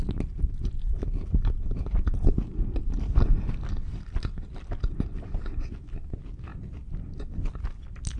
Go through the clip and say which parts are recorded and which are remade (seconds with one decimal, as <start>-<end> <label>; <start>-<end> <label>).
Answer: 0.0-8.2 recorded